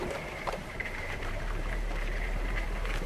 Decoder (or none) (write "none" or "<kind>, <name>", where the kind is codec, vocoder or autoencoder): vocoder, BigVGAN v2